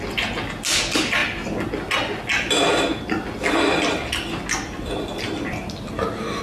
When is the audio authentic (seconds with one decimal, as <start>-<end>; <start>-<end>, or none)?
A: 0.0-6.4

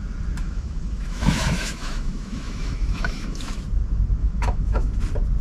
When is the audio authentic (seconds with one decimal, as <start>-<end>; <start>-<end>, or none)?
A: 0.0-0.4; 3.6-4.2; 5.0-5.4